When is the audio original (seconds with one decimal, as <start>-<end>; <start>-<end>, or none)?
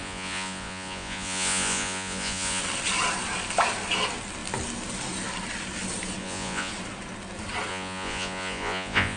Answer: 2.6-6.2; 6.7-7.7